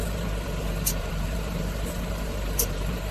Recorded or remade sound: remade